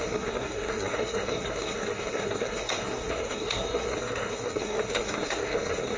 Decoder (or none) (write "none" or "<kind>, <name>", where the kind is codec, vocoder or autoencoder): codec, SNAC